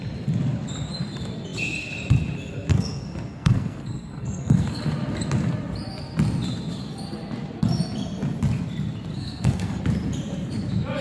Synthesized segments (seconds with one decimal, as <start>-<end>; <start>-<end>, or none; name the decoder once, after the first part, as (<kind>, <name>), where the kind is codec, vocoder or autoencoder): 2.7-4.8 (codec, SNAC); 9.1-9.8